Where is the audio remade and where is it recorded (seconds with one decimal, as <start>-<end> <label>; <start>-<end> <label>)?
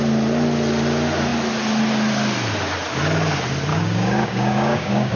0.0-3.7 recorded; 3.7-5.2 remade